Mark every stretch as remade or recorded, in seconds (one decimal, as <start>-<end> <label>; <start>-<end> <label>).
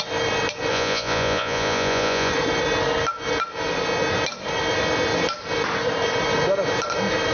0.0-0.7 recorded; 0.7-2.3 remade; 2.3-7.3 recorded